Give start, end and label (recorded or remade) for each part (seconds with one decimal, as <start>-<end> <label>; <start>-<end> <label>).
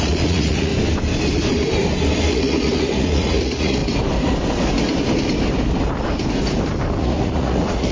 0.0-0.7 remade; 0.7-2.3 recorded; 2.3-3.8 remade; 3.8-7.0 recorded; 7.0-7.9 remade